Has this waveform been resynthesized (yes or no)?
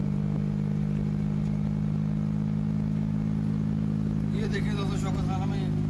no